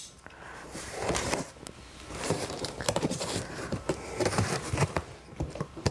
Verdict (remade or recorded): remade